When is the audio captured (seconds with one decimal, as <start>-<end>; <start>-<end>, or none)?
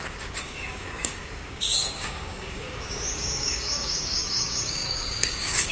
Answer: none